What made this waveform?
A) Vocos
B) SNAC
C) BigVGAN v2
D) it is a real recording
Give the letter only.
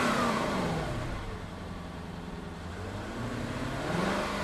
C